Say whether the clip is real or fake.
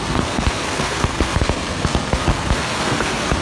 fake